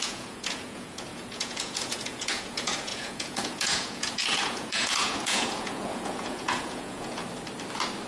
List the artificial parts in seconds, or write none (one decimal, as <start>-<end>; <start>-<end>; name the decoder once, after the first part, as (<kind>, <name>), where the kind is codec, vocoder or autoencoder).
0.0-7.2 (vocoder, Vocos)